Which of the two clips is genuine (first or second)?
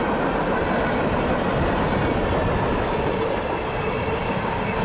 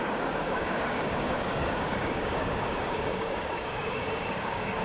first